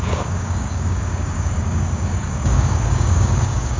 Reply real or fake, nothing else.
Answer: fake